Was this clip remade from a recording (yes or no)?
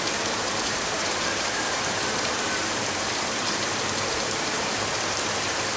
yes